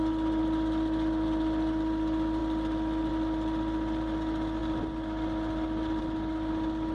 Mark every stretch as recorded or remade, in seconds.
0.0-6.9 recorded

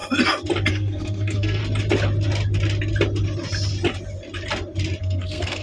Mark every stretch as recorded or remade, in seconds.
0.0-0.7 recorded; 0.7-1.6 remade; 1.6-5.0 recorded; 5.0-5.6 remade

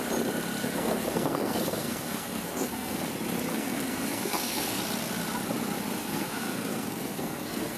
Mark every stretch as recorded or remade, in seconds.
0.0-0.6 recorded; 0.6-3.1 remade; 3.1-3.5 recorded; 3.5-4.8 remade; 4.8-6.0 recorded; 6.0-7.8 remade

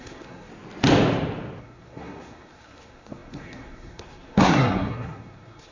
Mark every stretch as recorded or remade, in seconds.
0.0-0.5 remade; 0.5-1.6 recorded; 1.6-5.7 remade

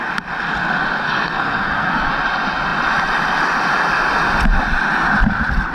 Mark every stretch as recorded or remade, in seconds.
0.0-1.0 recorded; 1.0-2.1 remade; 2.1-5.7 recorded